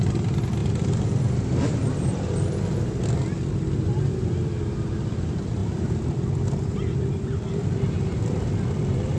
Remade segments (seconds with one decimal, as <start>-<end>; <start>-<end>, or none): none